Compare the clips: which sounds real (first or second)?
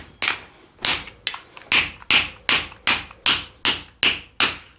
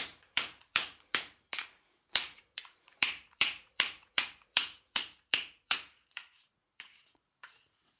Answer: first